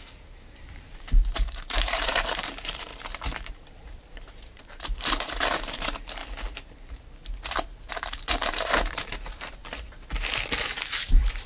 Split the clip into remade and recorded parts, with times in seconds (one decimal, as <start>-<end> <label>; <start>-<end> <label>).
0.0-2.9 remade; 2.9-3.5 recorded; 3.5-6.2 remade; 6.2-7.9 recorded; 7.9-9.6 remade; 9.6-10.6 recorded; 10.6-11.5 remade